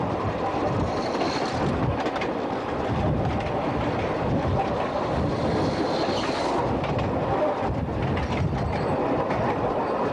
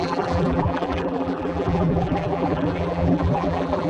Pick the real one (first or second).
first